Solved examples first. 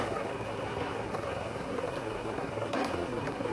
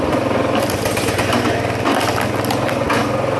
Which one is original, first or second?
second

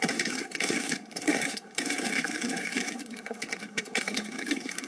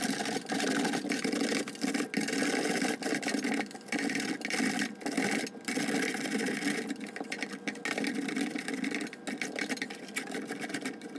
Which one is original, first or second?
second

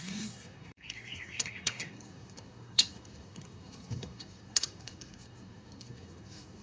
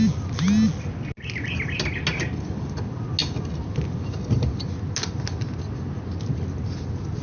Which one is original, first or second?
second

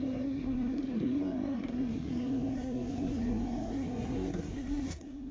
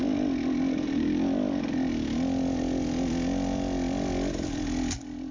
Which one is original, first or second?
second